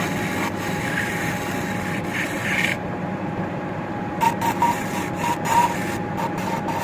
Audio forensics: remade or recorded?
recorded